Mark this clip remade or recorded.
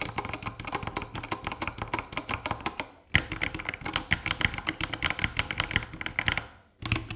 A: recorded